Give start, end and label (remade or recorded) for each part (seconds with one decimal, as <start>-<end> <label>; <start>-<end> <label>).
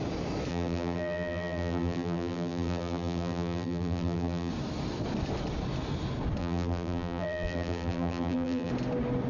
0.0-0.5 recorded; 0.5-4.5 remade; 4.5-6.4 recorded; 6.4-8.7 remade; 8.7-9.3 recorded